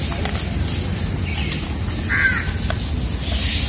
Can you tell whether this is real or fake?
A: real